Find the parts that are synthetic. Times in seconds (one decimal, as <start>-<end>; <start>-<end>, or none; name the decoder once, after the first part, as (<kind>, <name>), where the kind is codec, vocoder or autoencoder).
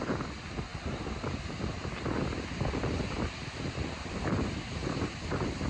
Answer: 4.8-5.7 (vocoder, BigVGAN v2)